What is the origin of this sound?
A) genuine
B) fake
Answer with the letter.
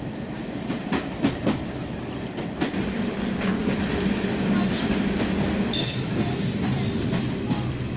A